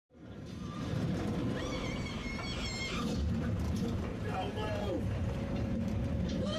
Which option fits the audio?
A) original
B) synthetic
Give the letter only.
B